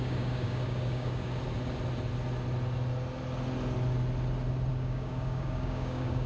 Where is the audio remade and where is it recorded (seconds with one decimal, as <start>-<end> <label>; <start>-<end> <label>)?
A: 0.0-1.3 remade; 1.3-4.7 recorded; 4.7-6.3 remade